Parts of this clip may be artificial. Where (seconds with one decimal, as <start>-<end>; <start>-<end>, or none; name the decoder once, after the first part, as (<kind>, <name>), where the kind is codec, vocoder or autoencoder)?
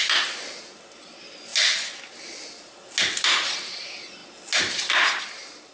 none